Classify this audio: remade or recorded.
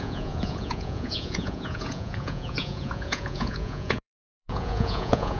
remade